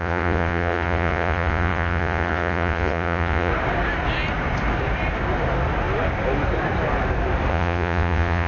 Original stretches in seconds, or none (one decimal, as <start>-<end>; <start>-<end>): 3.5-7.5